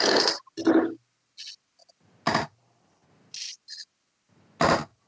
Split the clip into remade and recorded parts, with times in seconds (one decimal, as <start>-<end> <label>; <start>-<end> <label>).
0.0-5.1 recorded